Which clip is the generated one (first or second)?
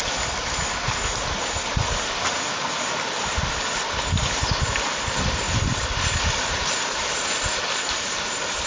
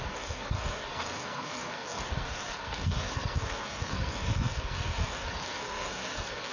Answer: second